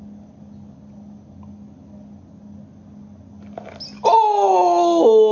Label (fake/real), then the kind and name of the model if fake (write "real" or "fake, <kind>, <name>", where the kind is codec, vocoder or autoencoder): real